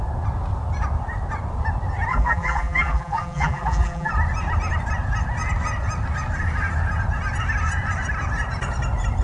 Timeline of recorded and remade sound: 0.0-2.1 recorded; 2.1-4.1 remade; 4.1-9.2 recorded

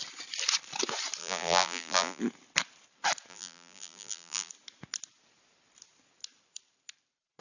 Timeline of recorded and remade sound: 0.0-1.2 recorded; 1.2-2.2 remade; 2.2-3.3 recorded; 3.3-4.5 remade; 4.5-7.4 recorded

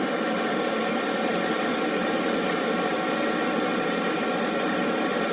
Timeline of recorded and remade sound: 0.0-1.3 remade; 1.3-4.5 recorded; 4.5-5.3 remade

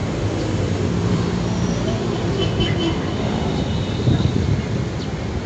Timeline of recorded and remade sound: 0.0-1.4 remade; 1.4-2.8 recorded; 2.8-3.9 remade; 3.9-5.5 recorded